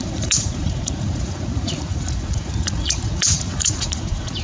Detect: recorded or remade remade